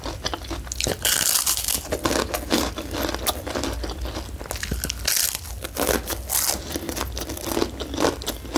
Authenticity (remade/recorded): recorded